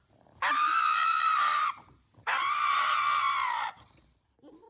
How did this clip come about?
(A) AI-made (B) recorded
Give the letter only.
A